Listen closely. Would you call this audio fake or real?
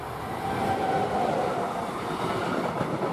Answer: real